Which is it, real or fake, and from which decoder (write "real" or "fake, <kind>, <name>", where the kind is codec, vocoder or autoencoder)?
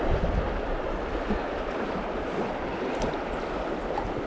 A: real